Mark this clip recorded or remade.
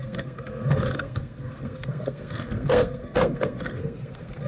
remade